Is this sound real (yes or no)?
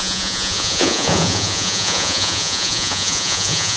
no